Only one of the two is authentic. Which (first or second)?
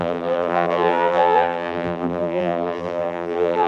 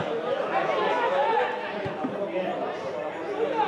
second